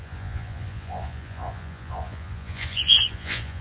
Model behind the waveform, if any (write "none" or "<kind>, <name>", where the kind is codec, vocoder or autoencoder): vocoder, Vocos